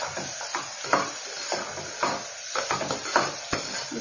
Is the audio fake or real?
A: real